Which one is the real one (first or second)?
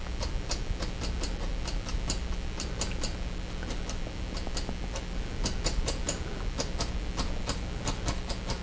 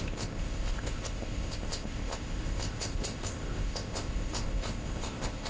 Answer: first